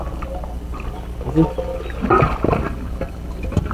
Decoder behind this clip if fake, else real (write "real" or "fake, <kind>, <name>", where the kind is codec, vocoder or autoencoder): real